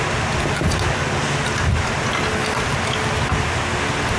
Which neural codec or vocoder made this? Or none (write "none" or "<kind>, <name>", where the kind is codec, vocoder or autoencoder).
none